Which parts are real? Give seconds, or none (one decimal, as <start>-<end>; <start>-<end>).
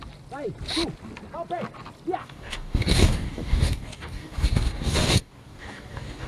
0.0-2.2